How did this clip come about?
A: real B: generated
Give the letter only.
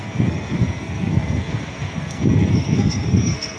B